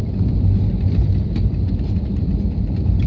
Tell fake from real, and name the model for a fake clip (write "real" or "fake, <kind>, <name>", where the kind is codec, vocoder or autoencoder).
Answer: real